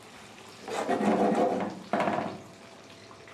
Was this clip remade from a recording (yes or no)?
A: no